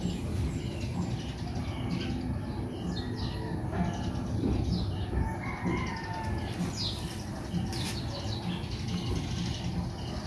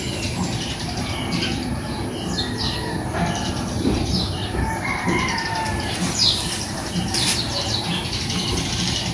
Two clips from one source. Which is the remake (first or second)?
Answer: second